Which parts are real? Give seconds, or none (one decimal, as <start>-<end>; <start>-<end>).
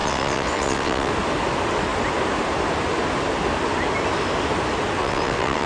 1.1-5.0